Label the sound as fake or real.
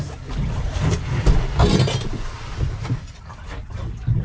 real